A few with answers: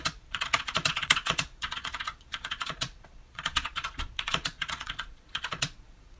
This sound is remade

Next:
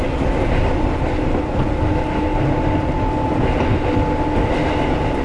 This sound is recorded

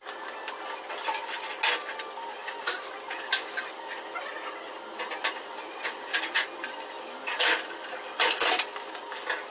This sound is recorded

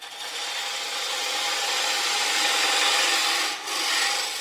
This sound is recorded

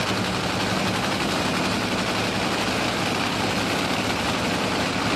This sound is recorded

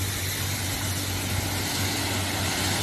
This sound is recorded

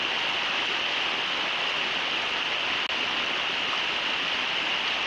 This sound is recorded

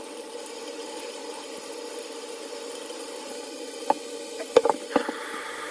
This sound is recorded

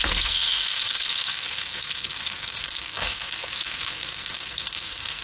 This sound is remade